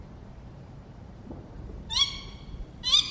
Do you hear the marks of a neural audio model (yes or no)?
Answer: yes